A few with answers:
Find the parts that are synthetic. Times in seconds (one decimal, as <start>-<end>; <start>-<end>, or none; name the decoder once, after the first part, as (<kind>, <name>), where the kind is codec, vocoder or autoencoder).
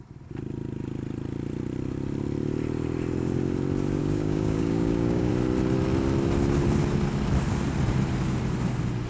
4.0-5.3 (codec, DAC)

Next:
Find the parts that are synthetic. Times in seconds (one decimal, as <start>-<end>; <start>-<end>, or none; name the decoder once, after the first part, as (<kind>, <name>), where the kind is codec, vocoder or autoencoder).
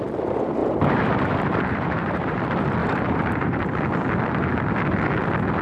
0.6-2.4 (vocoder, BigVGAN v2); 2.8-3.6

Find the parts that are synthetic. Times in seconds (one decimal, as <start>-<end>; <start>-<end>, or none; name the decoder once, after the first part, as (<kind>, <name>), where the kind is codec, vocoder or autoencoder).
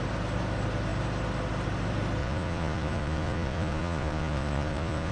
2.2-5.1 (vocoder, Vocos)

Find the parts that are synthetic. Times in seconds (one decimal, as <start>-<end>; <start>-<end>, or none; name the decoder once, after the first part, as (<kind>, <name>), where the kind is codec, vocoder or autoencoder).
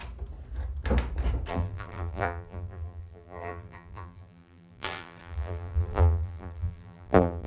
1.5-7.5 (vocoder, BigVGAN v2)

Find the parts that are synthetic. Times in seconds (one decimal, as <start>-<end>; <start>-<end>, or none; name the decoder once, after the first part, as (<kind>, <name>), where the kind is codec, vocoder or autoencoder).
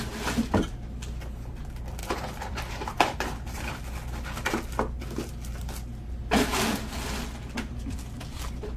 2.0-3.8 (vocoder, BigVGAN v2)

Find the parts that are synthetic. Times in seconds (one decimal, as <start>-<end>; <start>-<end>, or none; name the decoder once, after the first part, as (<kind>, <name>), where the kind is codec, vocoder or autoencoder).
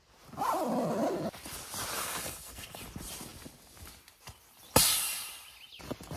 2.0-2.8 (codec, SNAC)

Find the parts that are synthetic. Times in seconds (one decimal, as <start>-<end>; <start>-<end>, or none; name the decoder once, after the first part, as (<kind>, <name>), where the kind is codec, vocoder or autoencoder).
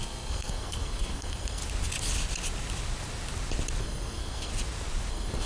0.0-1.6 (codec, SNAC); 3.8-4.5; 5.1-5.5